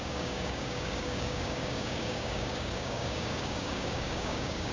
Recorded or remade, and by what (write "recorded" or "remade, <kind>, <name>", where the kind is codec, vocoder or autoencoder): remade, codec, DAC